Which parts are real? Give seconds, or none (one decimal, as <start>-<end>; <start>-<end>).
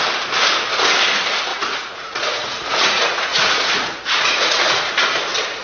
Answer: 0.0-1.5; 4.9-5.6